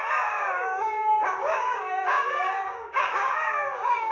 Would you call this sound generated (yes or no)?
yes